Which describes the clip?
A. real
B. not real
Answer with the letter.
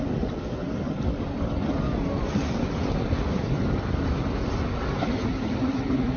A